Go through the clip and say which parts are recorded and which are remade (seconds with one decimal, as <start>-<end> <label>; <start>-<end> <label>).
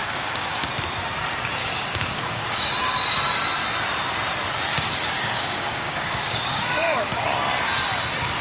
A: 0.0-0.7 remade; 0.7-1.6 recorded; 1.6-2.7 remade; 2.7-4.7 recorded; 4.7-7.2 remade; 7.2-8.4 recorded